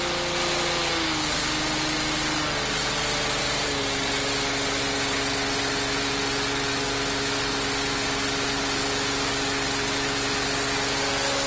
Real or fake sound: real